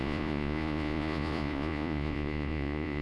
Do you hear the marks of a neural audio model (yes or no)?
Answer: yes